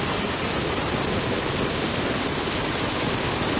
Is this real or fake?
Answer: real